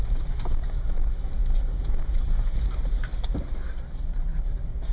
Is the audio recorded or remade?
recorded